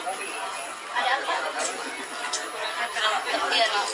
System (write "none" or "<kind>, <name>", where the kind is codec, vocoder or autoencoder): none